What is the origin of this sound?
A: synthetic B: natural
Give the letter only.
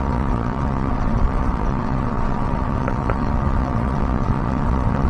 A